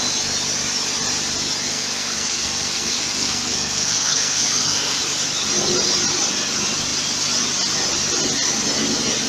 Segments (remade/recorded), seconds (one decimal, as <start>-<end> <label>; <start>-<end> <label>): 0.0-1.7 recorded; 1.7-5.0 remade; 5.0-9.3 recorded